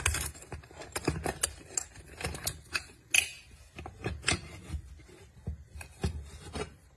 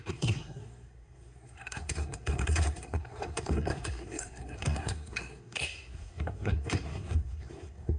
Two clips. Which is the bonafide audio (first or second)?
first